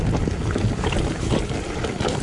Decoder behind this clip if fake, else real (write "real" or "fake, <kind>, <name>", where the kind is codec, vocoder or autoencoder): real